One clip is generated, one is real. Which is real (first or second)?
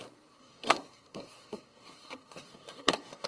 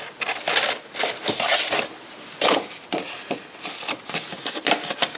second